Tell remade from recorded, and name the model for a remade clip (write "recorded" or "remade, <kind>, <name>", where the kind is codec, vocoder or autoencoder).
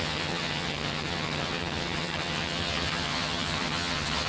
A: remade, vocoder, HiFi-GAN